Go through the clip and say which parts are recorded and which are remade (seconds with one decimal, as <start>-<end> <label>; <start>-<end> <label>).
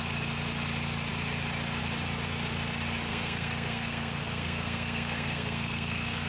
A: 0.0-3.1 recorded; 3.1-6.3 remade